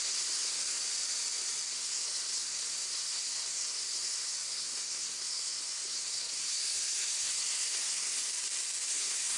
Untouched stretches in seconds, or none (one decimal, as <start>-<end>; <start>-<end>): 0.8-1.7; 8.2-8.9